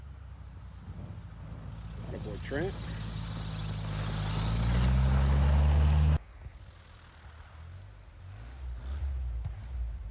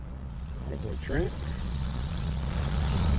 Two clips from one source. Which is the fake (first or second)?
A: second